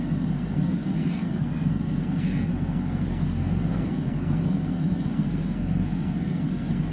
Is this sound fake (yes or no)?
yes